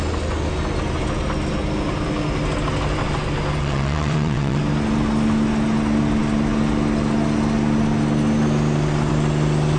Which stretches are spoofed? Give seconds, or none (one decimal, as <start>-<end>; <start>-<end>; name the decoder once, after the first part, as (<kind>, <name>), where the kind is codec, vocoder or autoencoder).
3.6-4.6 (vocoder, WaveNeXt)